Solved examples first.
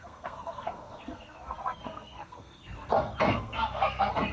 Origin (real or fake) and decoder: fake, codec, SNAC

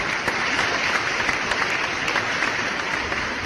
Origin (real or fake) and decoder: fake, vocoder, BigVGAN v2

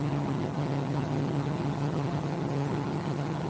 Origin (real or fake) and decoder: fake, vocoder, HiFi-GAN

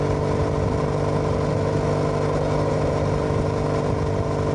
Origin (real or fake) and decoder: real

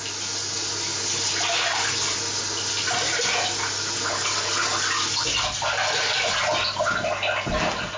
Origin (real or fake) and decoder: real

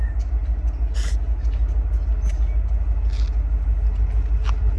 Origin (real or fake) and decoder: real